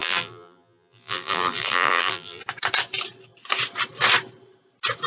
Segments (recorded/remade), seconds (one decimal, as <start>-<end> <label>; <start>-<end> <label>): 0.0-2.4 remade; 2.4-5.1 recorded